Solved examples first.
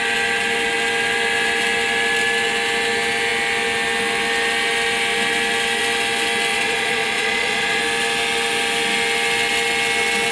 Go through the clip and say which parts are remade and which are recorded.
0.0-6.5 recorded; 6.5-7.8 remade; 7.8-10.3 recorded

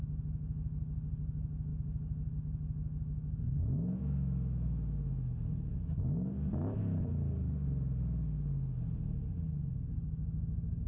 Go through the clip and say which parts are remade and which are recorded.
0.0-10.9 recorded